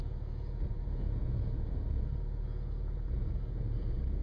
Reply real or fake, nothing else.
fake